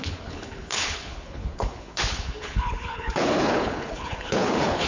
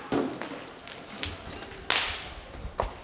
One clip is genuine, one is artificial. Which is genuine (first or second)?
second